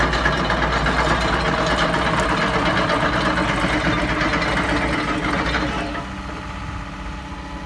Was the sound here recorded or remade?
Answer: recorded